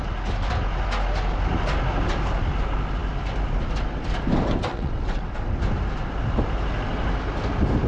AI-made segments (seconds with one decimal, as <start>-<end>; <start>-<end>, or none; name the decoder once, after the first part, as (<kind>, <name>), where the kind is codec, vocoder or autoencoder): 4.7-5.4 (vocoder, WaveNeXt)